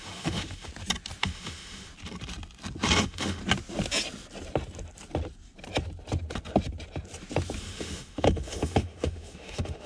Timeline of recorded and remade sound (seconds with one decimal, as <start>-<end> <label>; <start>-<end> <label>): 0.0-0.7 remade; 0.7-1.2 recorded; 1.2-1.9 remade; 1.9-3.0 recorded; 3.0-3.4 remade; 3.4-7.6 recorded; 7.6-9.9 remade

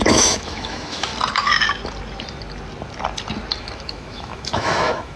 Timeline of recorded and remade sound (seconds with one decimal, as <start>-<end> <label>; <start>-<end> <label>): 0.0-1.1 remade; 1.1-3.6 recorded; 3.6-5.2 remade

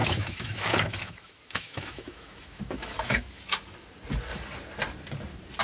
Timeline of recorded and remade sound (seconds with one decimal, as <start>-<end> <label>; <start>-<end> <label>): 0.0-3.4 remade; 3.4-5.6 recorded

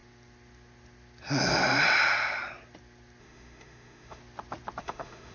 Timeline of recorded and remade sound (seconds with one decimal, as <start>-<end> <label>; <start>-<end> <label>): 0.0-3.2 recorded; 3.2-4.2 remade; 4.2-4.8 recorded; 4.8-5.3 remade

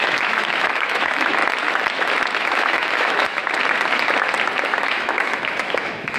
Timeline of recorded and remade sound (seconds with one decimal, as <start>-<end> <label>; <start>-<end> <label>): 0.0-1.4 remade; 1.4-2.4 recorded; 2.4-3.4 remade; 3.4-4.6 recorded; 4.6-6.2 remade